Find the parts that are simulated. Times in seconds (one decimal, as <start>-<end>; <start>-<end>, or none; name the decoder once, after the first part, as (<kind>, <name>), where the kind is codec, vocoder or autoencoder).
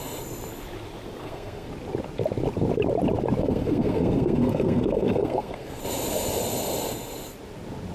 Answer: 1.2-1.7 (codec, SNAC); 3.4-5.8